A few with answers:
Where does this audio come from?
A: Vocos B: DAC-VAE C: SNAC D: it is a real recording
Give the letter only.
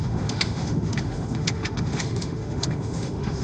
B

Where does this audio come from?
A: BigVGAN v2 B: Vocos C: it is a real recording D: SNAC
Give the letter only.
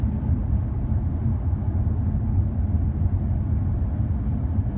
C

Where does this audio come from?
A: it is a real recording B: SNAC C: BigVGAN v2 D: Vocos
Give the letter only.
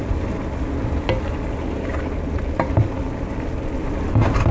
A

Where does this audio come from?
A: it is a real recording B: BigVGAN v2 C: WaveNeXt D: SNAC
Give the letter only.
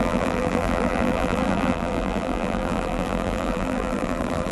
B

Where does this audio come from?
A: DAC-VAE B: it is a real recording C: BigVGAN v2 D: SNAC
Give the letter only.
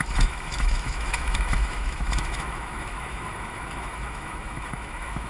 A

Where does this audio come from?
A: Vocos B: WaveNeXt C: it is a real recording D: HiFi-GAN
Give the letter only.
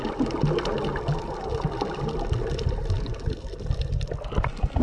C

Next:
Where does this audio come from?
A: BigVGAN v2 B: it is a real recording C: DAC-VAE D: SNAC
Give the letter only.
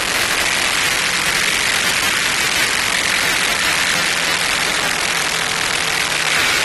B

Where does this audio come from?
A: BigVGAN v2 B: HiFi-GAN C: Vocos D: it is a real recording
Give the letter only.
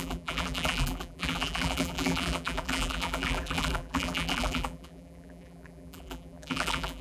A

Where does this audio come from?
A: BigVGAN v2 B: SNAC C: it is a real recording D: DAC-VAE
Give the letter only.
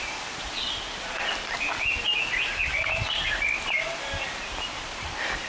A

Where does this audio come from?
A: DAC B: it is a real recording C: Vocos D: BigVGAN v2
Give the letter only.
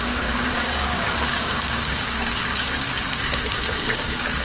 A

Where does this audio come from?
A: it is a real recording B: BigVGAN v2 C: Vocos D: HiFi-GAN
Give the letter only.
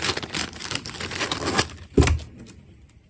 A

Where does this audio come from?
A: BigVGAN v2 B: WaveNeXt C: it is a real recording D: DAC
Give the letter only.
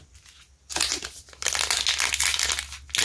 C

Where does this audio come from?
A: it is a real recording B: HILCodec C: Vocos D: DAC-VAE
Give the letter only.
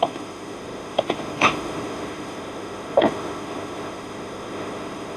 D